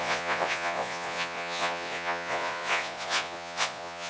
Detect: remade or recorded remade